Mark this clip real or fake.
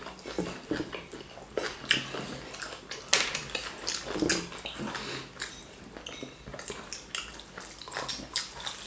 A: real